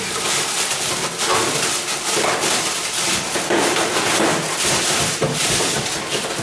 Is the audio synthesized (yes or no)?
no